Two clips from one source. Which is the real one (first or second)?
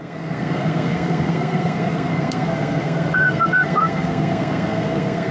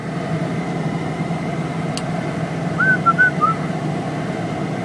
second